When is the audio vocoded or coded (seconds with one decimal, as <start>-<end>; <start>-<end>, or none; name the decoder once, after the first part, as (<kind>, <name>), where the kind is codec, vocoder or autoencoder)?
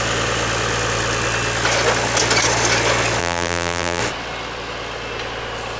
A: 3.2-4.0 (vocoder, BigVGAN v2)